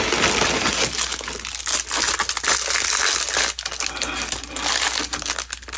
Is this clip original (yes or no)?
yes